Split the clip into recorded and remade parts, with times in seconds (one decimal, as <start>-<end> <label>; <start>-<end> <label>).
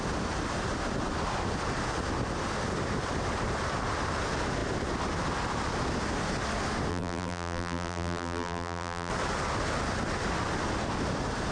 0.0-6.9 recorded; 6.9-9.1 remade; 9.1-11.5 recorded